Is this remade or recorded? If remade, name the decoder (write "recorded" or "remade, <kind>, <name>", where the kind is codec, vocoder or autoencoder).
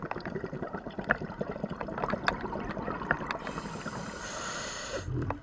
recorded